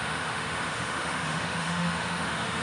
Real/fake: fake